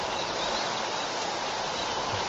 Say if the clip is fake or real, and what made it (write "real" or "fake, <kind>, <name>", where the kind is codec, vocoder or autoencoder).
real